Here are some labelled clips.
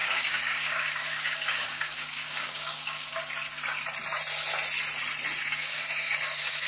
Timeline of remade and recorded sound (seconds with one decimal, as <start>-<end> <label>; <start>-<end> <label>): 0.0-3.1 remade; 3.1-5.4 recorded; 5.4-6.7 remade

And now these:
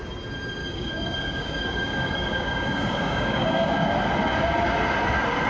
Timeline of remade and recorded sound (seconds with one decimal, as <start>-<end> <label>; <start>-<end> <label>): 0.0-0.6 recorded; 0.6-3.9 remade; 3.9-5.5 recorded

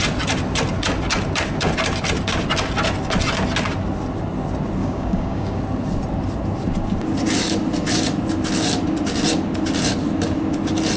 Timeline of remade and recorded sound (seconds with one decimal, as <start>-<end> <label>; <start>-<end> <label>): 0.0-4.8 recorded; 4.8-5.6 remade; 5.6-11.0 recorded

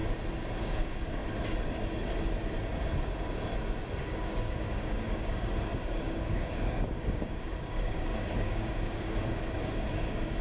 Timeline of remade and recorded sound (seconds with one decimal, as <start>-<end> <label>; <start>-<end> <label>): 0.0-0.6 recorded; 0.6-1.2 remade; 1.2-4.0 recorded; 4.0-10.4 remade

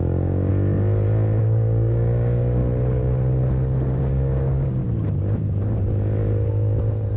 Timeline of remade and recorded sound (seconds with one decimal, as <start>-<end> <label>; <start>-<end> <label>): 0.0-0.5 remade; 0.5-1.4 recorded; 1.4-2.6 remade; 2.6-4.0 recorded; 4.0-4.8 remade; 4.8-7.2 recorded

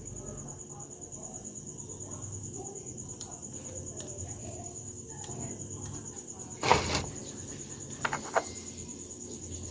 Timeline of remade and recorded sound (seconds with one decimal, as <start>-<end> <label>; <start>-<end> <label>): 0.0-4.4 recorded; 4.4-5.5 remade; 5.5-9.7 recorded